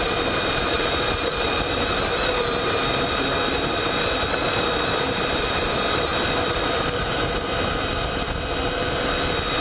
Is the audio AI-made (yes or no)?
no